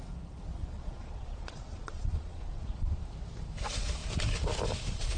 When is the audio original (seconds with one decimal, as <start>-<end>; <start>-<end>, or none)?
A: 0.0-0.5; 3.0-5.2